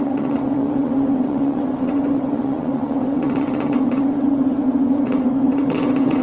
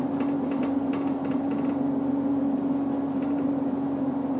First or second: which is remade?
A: first